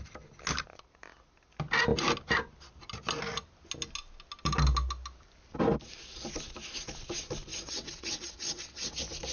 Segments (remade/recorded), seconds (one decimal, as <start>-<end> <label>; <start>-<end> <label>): 0.0-7.5 recorded; 7.5-8.9 remade; 8.9-9.3 recorded